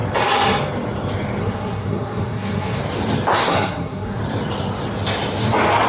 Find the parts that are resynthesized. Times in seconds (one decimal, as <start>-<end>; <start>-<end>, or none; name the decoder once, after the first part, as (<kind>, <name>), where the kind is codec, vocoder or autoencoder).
1.4-2.8 (codec, SNAC); 3.3-4.2